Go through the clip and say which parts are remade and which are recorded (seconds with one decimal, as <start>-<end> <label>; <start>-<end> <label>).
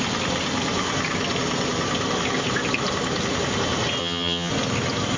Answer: 0.0-4.0 recorded; 4.0-4.5 remade; 4.5-5.2 recorded